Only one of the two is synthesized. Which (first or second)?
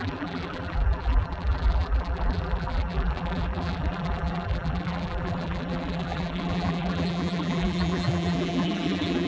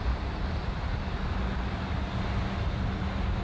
first